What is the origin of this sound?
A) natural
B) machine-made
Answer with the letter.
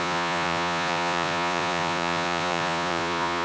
B